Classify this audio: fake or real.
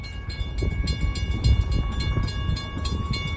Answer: real